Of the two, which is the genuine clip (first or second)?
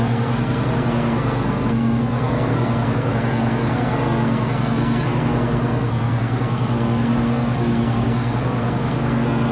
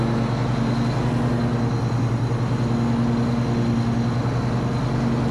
second